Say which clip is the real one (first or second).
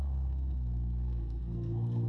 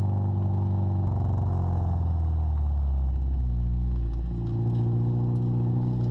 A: second